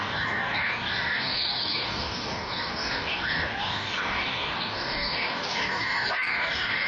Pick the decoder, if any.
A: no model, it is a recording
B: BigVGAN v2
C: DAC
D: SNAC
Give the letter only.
C